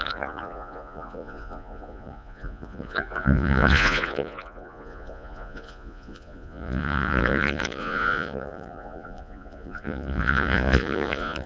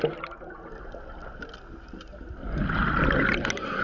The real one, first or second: second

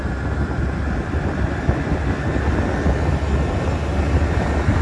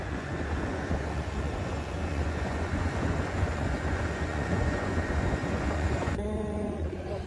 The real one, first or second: first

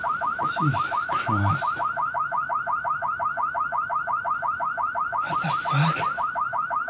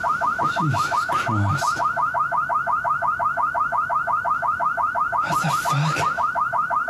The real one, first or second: second